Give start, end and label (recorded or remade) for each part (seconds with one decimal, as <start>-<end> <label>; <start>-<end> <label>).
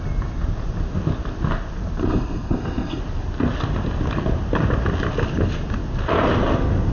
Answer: 0.0-2.0 recorded; 2.0-3.0 remade; 3.0-6.9 recorded